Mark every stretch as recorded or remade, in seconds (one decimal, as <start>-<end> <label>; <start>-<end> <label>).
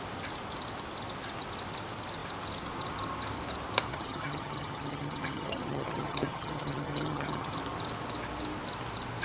0.0-3.9 recorded; 3.9-7.5 remade; 7.5-9.2 recorded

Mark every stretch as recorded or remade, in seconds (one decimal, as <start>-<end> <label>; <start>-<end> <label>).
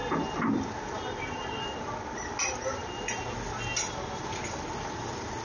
0.0-5.4 recorded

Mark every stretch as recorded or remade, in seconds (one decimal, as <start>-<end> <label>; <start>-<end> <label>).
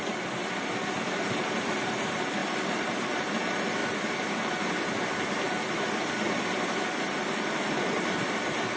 0.0-8.8 recorded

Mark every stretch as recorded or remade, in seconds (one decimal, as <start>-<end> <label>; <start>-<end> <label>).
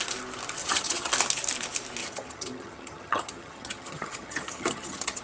0.0-0.6 recorded; 0.6-1.1 remade; 1.1-2.0 recorded; 2.0-5.2 remade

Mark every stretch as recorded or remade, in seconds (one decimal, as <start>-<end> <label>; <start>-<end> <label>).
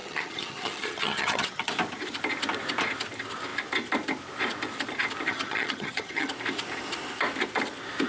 0.0-1.7 remade; 1.7-5.3 recorded; 5.3-6.3 remade; 6.3-8.1 recorded